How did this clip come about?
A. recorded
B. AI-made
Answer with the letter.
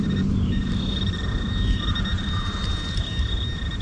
B